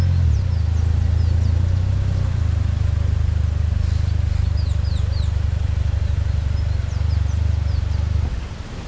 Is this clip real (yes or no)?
yes